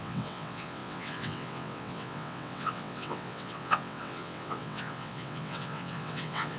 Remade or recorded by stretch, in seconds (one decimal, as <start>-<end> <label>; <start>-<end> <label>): 0.0-6.6 remade